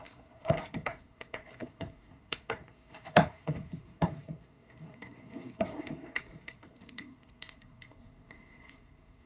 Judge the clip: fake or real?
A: fake